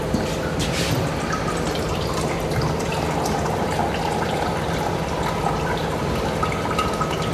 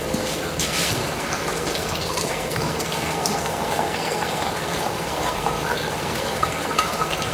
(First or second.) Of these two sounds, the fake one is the second